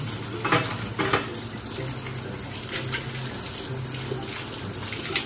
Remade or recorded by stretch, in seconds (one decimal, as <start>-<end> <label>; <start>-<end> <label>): 0.0-5.3 recorded